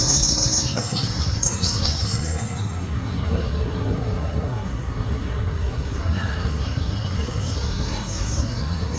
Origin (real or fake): fake